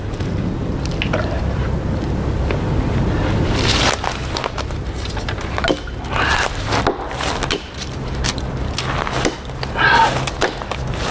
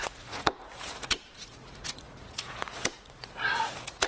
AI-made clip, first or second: second